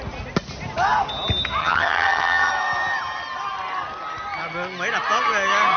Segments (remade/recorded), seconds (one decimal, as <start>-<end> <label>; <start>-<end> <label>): 0.0-1.6 recorded; 1.6-2.5 remade; 2.5-5.8 recorded